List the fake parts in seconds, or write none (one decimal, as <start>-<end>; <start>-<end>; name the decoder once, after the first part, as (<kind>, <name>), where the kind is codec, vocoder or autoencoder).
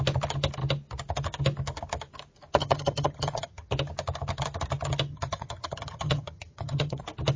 2.6-3.7 (vocoder, HiFi-GAN); 5.1-7.0